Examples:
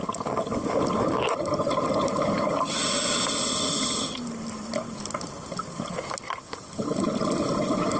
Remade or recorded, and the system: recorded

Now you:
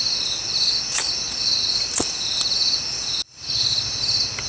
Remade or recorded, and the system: recorded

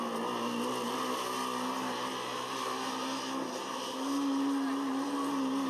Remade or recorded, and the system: recorded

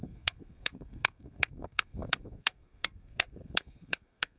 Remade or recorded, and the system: remade, codec, SNAC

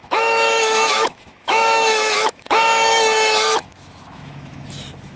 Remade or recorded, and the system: remade, autoencoder, DAC-VAE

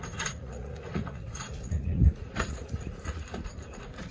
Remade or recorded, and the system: remade, vocoder, Vocos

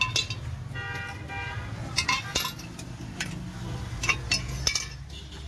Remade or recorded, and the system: recorded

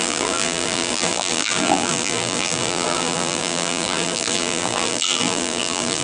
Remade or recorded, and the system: remade, vocoder, BigVGAN v2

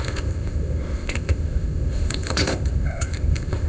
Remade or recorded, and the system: remade, codec, ZipCodec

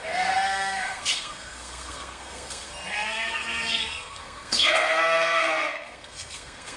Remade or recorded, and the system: remade, codec, SNAC